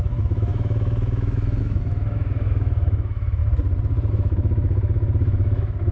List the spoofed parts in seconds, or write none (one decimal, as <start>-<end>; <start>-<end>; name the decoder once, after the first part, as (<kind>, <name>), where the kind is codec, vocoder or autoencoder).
0.0-3.4 (autoencoder, DAC-VAE); 4.1-5.9